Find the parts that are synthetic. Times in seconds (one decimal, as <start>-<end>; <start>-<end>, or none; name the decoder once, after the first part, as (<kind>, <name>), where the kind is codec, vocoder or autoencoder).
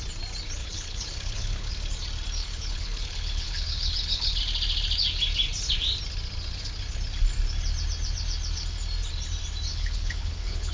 0.6-1.7 (codec, HILCodec); 2.4-4.4; 9.7-10.7